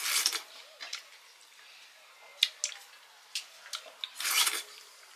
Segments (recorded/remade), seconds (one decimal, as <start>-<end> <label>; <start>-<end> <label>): 0.0-5.2 recorded